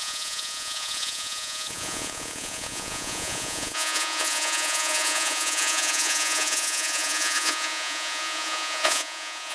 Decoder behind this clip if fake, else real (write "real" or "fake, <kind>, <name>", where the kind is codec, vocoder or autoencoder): fake, vocoder, Vocos